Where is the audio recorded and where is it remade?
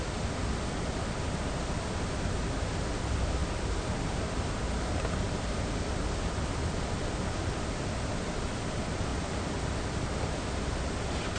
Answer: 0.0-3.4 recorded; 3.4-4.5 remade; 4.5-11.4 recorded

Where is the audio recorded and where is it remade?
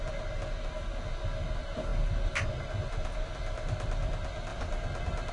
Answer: 0.0-4.5 recorded; 4.5-5.3 remade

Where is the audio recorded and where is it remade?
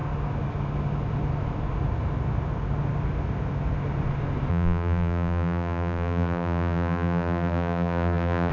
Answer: 0.0-4.5 recorded; 4.5-8.5 remade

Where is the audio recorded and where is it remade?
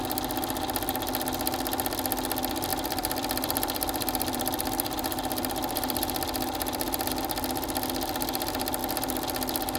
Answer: 0.0-2.7 recorded; 2.7-7.1 remade; 7.1-9.8 recorded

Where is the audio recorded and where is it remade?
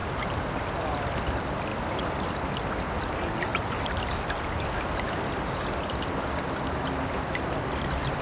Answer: 0.0-0.6 remade; 0.6-3.5 recorded; 3.5-4.3 remade; 4.3-8.2 recorded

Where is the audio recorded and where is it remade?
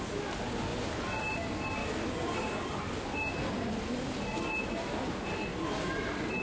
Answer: 0.0-0.7 recorded; 0.7-1.4 remade; 1.4-1.8 recorded; 1.8-5.1 remade; 5.1-5.5 recorded; 5.5-6.0 remade; 6.0-6.4 recorded